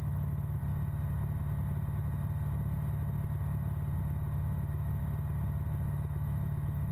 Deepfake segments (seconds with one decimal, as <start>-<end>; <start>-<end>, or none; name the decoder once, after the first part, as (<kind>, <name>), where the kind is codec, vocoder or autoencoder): 0.0-0.6 (autoencoder, DAC-VAE); 4.0-5.0; 5.7-6.9